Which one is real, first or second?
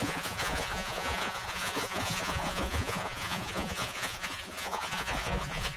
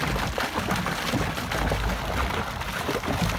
second